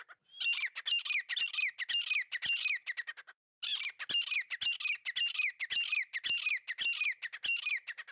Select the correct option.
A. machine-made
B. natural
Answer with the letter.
B